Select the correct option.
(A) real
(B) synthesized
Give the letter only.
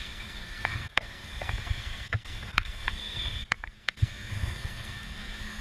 B